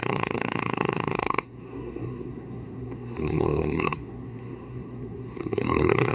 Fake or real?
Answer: fake